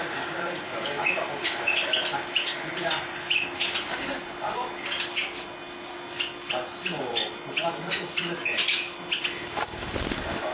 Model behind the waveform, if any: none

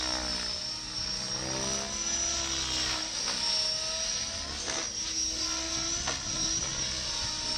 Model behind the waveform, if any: none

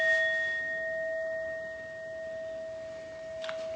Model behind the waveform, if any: none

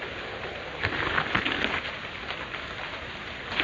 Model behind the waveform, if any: none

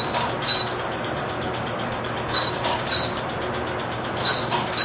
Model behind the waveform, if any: codec, DAC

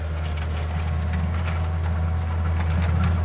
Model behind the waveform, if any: none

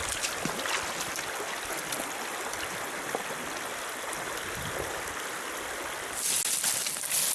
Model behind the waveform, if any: none